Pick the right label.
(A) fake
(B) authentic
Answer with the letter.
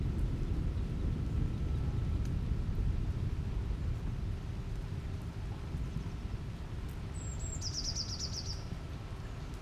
B